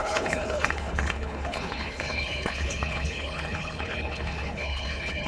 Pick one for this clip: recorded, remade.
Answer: remade